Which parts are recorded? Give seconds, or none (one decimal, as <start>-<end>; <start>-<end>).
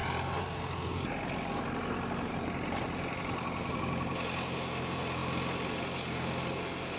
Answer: 0.0-7.0